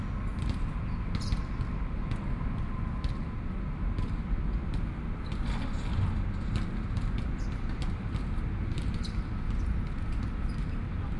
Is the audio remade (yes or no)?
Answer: no